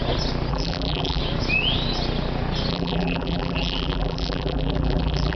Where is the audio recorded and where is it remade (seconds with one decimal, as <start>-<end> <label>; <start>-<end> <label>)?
0.0-0.5 recorded; 0.5-1.2 remade; 1.2-2.7 recorded; 2.7-5.4 remade